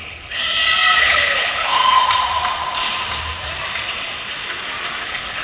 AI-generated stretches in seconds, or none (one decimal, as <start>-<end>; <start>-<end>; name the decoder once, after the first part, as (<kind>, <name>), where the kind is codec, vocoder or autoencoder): 0.0-0.4 (codec, HILCodec); 1.0-1.8; 5.0-5.4